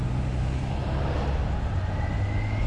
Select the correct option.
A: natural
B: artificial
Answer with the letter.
A